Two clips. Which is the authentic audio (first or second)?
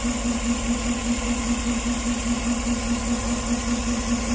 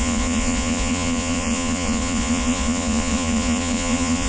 first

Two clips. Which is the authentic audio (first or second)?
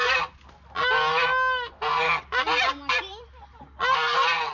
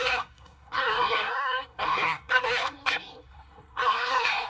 first